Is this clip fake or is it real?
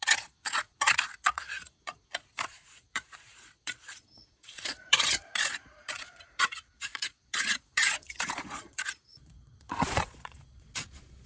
fake